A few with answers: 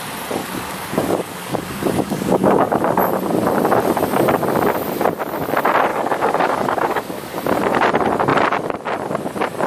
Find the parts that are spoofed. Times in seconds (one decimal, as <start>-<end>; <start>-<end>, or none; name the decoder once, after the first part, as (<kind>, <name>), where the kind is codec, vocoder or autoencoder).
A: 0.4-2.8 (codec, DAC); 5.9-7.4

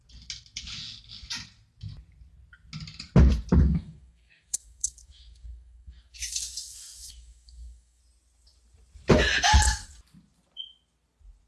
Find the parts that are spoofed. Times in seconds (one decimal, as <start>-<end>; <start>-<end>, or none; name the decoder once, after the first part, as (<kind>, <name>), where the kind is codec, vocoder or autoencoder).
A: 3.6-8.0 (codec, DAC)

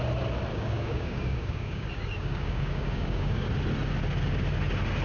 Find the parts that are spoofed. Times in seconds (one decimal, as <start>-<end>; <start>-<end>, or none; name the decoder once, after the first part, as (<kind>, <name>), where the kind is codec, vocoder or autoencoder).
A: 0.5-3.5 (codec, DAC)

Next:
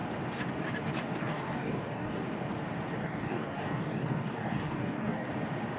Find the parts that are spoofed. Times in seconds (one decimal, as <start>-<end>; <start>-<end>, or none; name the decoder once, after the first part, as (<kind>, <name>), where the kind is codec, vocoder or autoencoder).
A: 1.2-2.2 (codec, DAC); 3.0-5.3

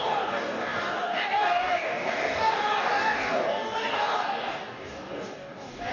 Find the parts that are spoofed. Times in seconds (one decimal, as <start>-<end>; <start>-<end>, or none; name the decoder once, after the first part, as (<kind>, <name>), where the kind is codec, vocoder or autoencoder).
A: 0.0-5.9 (codec, DAC)